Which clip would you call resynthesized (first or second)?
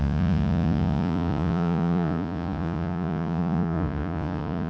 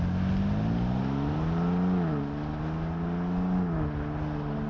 first